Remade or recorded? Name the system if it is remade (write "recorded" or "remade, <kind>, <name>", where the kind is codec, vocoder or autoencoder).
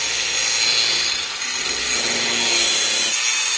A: recorded